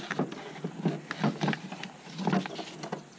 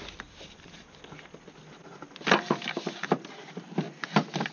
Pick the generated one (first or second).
second